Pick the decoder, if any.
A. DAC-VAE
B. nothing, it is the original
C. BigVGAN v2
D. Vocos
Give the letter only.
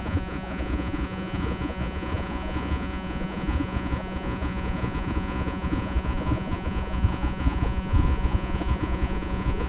D